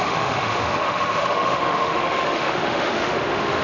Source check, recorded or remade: remade